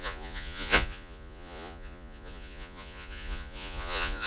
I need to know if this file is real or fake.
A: fake